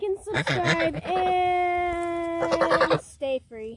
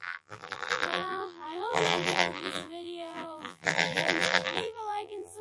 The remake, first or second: second